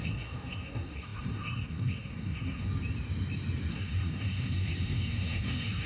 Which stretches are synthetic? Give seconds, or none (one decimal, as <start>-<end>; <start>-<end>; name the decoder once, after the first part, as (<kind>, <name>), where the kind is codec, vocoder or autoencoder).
0.0-2.7 (codec, SNAC); 3.7-5.9